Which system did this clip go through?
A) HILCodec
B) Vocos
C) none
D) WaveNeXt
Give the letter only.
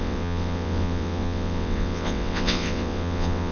D